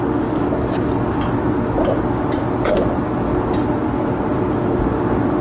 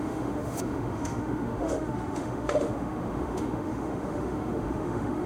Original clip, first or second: first